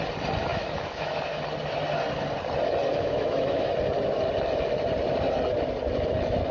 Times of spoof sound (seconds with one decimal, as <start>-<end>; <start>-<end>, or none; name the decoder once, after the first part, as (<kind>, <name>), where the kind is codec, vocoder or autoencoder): 0.5-1.4 (autoencoder, DAC-VAE); 2.9-3.7